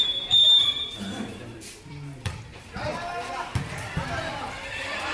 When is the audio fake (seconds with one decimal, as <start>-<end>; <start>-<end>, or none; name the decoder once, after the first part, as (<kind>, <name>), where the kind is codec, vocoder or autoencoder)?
0.0-2.9 (vocoder, BigVGAN v2); 4.6-5.1